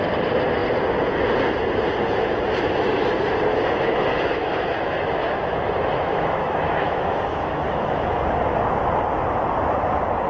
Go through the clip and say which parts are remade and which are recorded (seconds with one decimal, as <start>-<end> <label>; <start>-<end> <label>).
0.0-3.5 recorded; 3.5-8.1 remade; 8.1-10.3 recorded